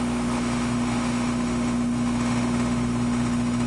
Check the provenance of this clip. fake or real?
fake